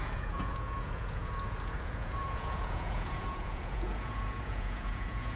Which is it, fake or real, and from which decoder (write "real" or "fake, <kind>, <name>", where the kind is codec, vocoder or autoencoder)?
fake, vocoder, Vocos